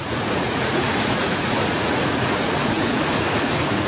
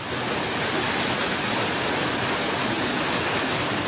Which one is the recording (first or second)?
second